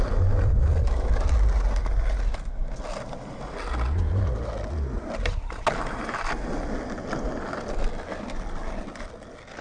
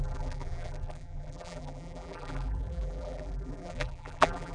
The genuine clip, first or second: first